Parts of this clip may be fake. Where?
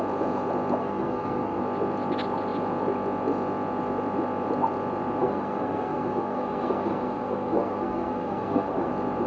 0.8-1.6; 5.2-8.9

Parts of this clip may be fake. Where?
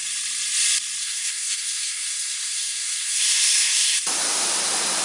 1.0-4.0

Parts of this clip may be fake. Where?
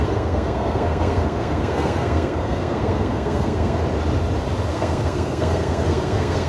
0.0-3.8; 4.7-6.5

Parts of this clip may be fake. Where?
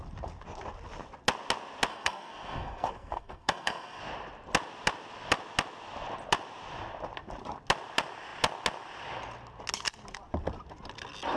1.9-4.0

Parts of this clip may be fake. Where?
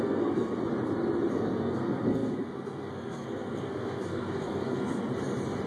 0.0-0.6; 1.3-5.1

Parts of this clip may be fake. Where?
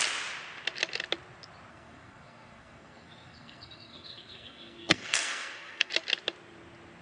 1.7-5.9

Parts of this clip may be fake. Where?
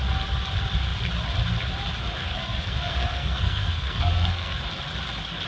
2.2-4.6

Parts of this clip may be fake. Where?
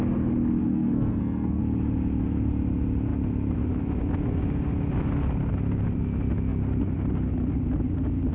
0.6-1.6